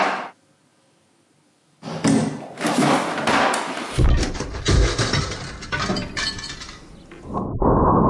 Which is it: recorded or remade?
recorded